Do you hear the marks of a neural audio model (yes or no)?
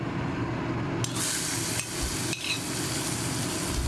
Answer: no